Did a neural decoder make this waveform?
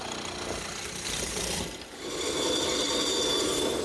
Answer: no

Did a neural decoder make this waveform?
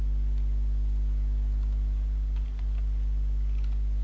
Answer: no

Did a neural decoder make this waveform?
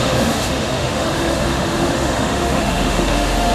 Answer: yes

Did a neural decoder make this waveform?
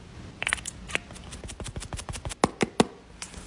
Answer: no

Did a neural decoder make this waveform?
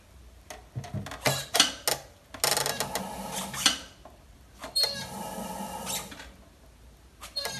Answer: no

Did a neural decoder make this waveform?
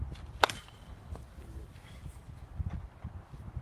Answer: no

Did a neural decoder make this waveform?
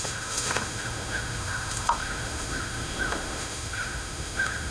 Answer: yes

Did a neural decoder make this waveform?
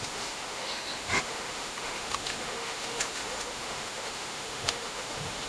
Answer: yes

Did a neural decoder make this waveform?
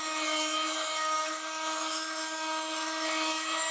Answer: yes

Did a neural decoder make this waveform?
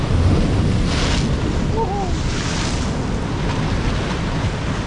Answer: no